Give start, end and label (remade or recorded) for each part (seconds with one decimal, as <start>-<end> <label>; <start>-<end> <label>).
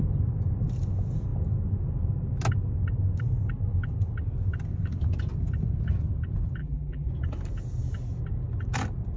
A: 0.0-6.6 recorded; 6.6-7.1 remade; 7.1-9.2 recorded